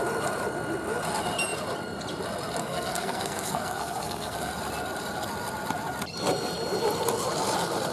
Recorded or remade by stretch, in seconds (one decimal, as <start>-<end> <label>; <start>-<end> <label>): 0.0-2.6 recorded; 2.6-4.5 remade; 4.5-7.9 recorded